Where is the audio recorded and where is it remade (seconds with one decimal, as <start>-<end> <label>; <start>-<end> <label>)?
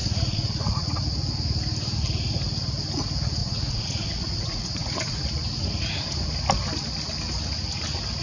0.0-1.0 remade; 1.0-3.4 recorded; 3.4-5.2 remade; 5.2-8.2 recorded